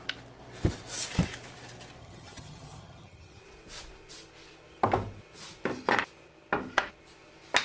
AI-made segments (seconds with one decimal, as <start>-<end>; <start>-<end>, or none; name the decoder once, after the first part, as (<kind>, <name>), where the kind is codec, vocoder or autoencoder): 2.0-3.4 (vocoder, HiFi-GAN)